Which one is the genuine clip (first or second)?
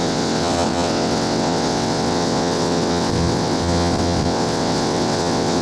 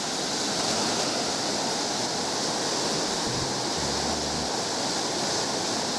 second